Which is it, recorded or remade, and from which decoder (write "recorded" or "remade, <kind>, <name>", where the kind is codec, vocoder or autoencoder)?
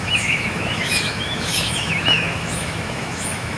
remade, autoencoder, DAC-VAE